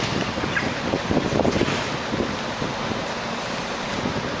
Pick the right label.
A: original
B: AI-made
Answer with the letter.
A